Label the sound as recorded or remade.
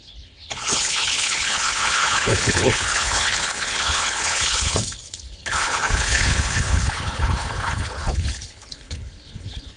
remade